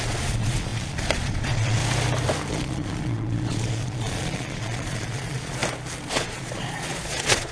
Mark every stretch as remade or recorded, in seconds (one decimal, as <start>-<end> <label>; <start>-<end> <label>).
0.0-1.8 remade; 1.8-2.5 recorded; 2.5-5.6 remade; 5.6-6.1 recorded; 6.1-7.5 remade

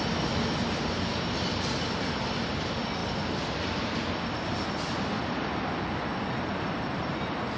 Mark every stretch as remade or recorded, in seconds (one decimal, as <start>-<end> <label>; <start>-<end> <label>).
0.0-7.6 recorded

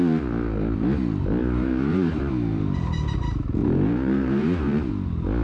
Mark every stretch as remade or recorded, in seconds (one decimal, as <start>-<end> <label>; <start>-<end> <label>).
0.0-1.4 recorded; 1.4-2.6 remade; 2.6-3.6 recorded; 3.6-4.9 remade; 4.9-5.4 recorded

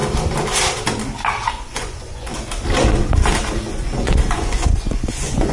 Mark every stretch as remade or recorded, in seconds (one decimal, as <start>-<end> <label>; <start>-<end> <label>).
0.0-1.5 recorded; 1.5-2.3 remade; 2.3-3.7 recorded; 3.7-5.5 remade

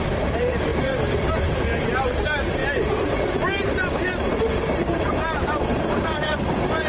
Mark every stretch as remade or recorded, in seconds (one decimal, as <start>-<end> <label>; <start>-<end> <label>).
0.0-6.9 remade